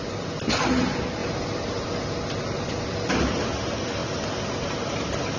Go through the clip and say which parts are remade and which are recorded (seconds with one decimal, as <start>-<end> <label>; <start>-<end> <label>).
0.0-5.4 recorded